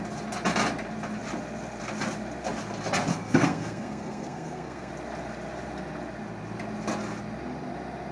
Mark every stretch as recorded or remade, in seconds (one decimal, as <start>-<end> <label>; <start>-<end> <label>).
0.0-3.1 recorded; 3.1-4.9 remade; 4.9-8.1 recorded